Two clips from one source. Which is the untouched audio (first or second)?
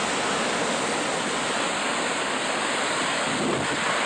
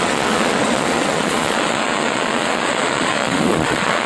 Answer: first